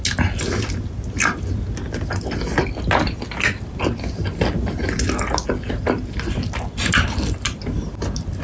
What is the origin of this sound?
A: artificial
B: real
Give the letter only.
B